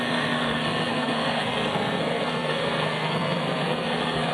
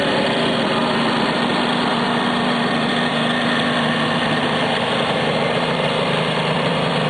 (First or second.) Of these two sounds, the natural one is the second